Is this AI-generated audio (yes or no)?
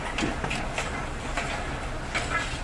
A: no